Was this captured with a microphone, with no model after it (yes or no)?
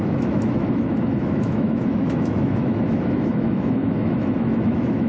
no